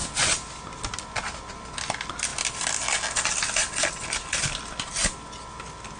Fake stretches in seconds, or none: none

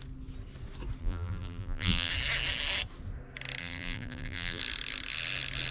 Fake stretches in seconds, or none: 1.0-2.1; 3.6-4.6

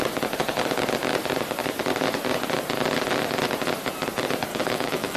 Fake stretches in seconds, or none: 4.5-5.2

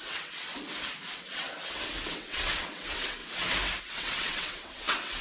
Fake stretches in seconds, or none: 0.0-0.5; 1.2-3.2; 3.8-5.2